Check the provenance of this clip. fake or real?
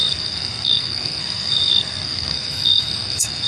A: fake